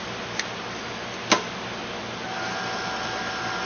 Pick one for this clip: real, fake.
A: real